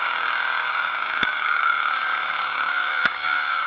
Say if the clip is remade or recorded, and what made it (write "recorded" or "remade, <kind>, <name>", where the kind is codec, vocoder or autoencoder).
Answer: remade, codec, DAC